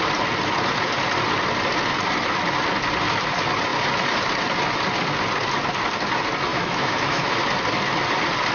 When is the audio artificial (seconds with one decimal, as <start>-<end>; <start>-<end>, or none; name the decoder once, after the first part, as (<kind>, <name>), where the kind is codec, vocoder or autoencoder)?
6.5-7.4 (autoencoder, DAC-VAE)